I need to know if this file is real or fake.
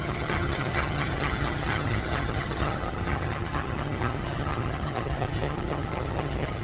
fake